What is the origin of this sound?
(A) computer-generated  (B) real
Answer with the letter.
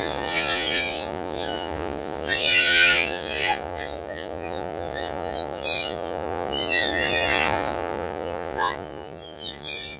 A